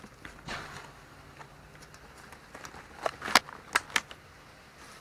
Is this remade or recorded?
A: recorded